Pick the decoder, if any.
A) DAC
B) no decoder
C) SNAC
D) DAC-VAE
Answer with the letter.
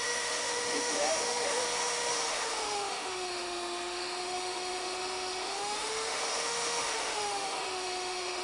D